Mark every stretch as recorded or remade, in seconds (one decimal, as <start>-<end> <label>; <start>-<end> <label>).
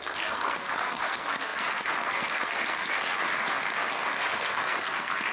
0.0-5.3 remade